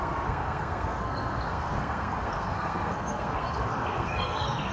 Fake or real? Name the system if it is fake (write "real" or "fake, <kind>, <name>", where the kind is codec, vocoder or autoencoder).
fake, codec, SNAC